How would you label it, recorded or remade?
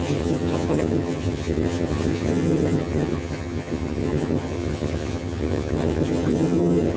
remade